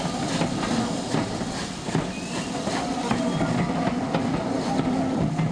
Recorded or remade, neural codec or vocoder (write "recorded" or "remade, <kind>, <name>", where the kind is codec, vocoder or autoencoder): recorded